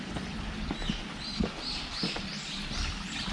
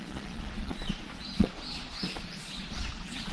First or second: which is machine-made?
second